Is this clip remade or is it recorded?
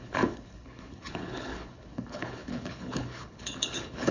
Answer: remade